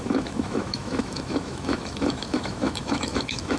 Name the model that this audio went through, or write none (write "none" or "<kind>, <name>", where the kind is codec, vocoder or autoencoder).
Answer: autoencoder, DAC-VAE